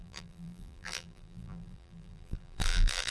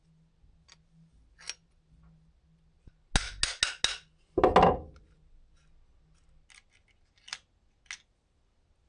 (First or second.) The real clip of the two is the second